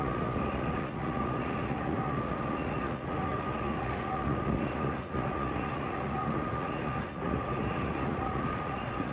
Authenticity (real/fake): fake